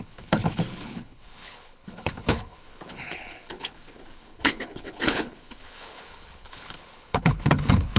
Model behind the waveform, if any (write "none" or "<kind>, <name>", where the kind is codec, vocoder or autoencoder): codec, HILCodec